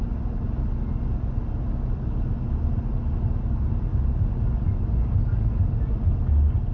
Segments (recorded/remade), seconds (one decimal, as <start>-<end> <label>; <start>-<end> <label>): 0.0-6.7 recorded